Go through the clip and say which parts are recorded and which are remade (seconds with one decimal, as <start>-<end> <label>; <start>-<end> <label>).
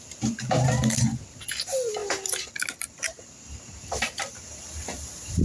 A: 0.0-5.4 recorded